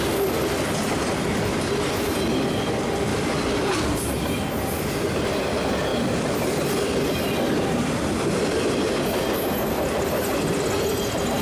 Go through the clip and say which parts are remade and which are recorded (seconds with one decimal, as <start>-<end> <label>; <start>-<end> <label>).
0.0-11.4 recorded